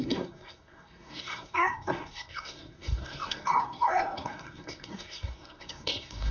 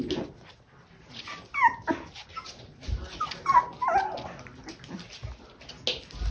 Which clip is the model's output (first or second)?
first